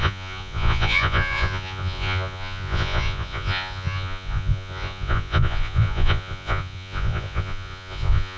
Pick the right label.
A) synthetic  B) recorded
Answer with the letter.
A